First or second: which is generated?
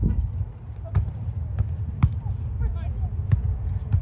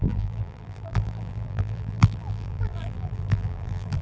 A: second